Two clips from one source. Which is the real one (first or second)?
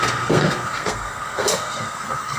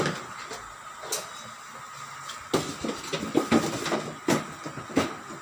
second